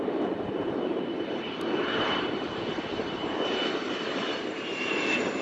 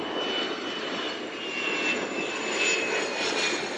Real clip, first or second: second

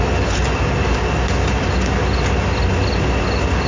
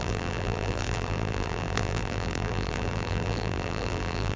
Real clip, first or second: first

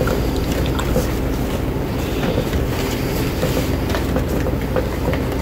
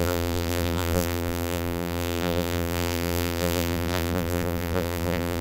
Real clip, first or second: first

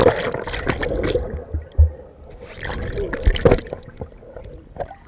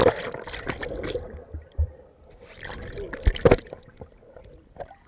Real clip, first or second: first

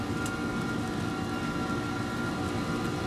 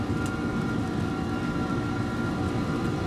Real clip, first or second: first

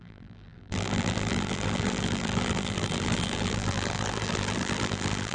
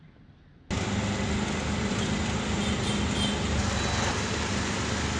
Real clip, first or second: second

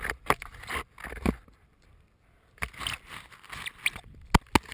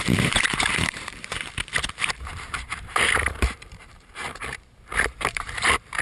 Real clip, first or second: first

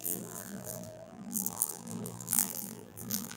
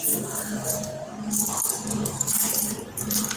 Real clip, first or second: second